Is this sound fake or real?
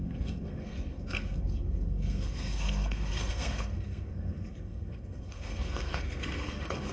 fake